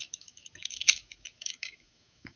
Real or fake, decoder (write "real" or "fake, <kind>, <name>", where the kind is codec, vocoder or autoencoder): fake, autoencoder, DAC-VAE